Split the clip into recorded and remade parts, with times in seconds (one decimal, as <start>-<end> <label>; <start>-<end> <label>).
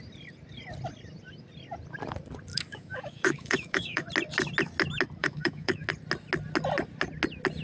0.0-2.5 recorded; 2.5-4.1 remade; 4.1-5.2 recorded; 5.2-5.9 remade; 5.9-7.6 recorded